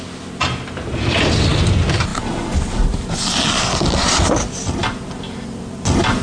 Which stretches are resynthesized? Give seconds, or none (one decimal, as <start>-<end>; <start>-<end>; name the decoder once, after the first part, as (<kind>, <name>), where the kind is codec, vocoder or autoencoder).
none